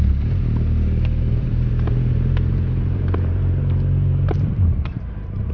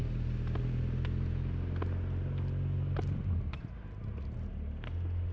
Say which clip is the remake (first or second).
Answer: first